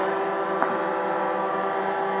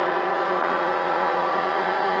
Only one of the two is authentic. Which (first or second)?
first